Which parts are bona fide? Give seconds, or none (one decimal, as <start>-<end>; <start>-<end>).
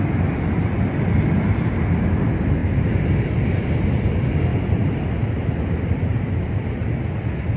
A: 0.0-4.5; 7.0-7.6